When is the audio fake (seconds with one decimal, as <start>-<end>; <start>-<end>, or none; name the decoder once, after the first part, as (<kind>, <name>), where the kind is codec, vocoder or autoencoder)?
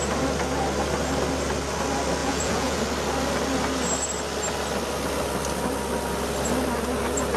2.2-2.8 (vocoder, Vocos)